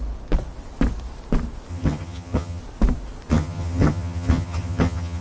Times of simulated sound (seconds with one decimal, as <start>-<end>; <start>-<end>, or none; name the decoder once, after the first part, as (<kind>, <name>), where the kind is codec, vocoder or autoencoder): 1.7-2.6 (vocoder, HiFi-GAN); 3.3-5.2